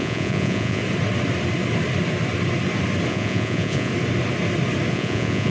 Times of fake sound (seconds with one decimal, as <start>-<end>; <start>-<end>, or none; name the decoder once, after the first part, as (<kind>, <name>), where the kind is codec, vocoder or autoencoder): 0.0-0.8 (vocoder, Vocos); 3.1-3.9; 4.9-5.5